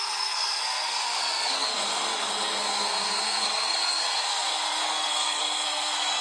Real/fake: fake